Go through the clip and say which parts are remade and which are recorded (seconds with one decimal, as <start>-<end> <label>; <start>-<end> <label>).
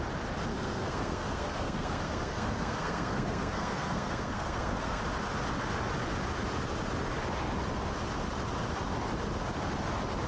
0.0-0.5 recorded; 0.5-5.0 remade; 5.0-10.3 recorded